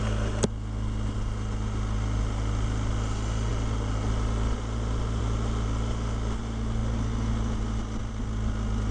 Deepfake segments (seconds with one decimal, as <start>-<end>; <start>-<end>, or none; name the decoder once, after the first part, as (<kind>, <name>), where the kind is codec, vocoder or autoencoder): none